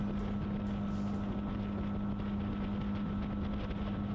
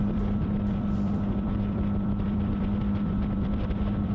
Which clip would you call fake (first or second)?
second